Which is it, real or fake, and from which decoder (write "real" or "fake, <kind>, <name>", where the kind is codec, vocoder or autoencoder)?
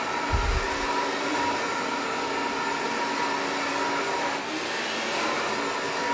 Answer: real